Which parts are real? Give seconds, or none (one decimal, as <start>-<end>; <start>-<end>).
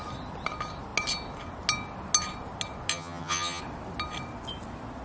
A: 0.0-2.9; 3.6-5.0